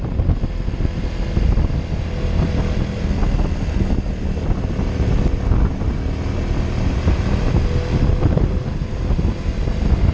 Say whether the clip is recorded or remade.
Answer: recorded